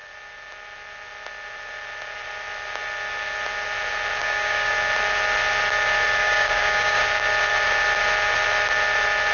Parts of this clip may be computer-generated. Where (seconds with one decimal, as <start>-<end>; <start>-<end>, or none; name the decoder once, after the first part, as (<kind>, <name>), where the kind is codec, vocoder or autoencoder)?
4.2-4.7 (codec, DAC); 6.2-7.0